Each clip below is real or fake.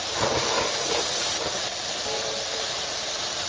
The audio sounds fake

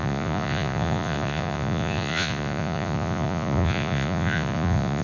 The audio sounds fake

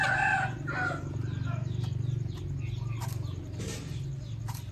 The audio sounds real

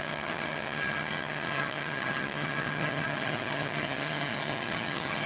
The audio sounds fake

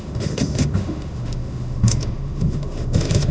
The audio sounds fake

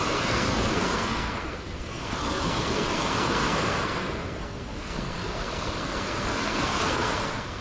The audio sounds fake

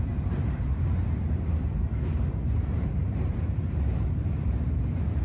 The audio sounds fake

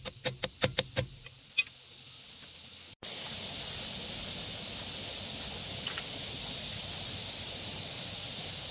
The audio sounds real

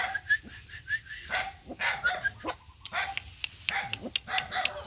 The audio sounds real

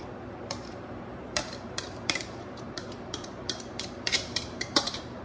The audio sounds fake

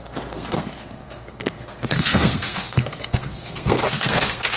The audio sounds fake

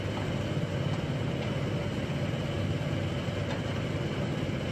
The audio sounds real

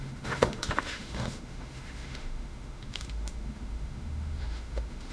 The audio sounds fake